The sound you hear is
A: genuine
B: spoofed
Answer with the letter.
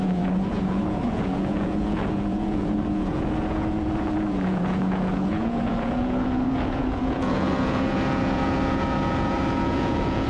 B